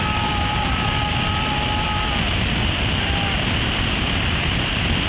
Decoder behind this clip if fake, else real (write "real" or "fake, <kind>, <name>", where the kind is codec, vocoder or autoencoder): real